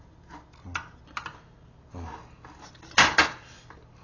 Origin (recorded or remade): recorded